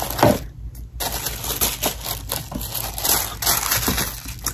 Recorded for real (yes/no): yes